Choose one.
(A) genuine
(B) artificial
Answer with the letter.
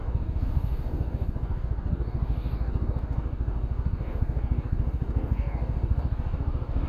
B